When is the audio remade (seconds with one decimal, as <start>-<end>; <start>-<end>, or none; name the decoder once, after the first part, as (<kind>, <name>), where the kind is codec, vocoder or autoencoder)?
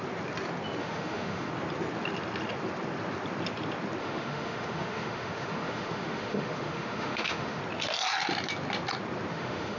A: 0.8-1.5 (autoencoder, DAC-VAE); 4.0-7.6; 9.3-9.8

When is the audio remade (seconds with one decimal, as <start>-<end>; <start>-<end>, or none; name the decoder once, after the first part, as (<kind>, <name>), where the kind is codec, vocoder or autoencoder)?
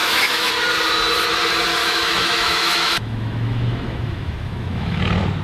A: 0.0-0.5 (autoencoder, DAC-VAE); 1.8-5.0